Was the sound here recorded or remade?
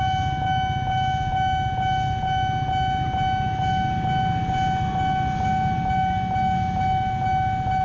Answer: recorded